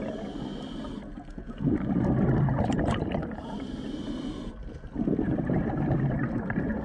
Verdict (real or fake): real